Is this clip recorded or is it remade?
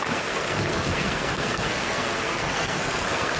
remade